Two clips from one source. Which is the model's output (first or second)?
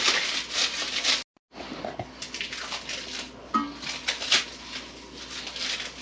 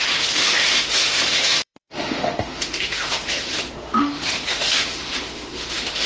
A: second